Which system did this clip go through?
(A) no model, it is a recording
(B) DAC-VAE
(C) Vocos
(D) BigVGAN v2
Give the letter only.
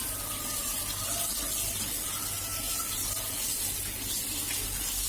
A